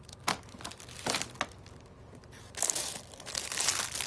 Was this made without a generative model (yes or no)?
yes